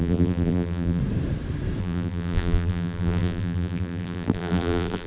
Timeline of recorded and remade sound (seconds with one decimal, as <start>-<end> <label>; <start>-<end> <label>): 0.0-1.0 remade; 1.0-1.8 recorded; 1.8-5.1 remade